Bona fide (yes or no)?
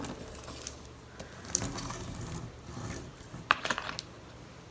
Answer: yes